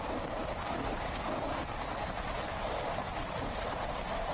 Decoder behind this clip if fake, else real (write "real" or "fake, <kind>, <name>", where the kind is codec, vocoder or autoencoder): real